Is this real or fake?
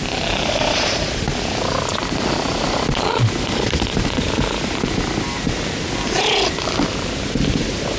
real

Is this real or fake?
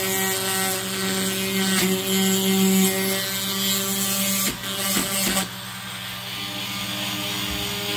real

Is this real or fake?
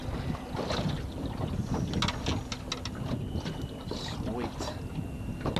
real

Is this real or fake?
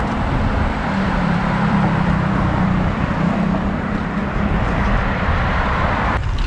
fake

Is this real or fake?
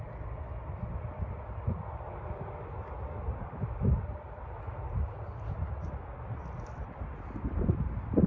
real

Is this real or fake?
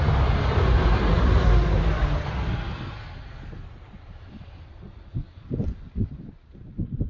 real